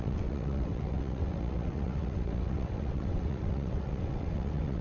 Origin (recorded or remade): remade